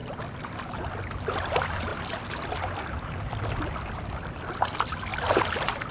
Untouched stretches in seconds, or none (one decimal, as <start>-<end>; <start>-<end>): 0.0-5.9